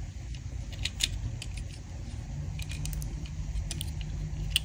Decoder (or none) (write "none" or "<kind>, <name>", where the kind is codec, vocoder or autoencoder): none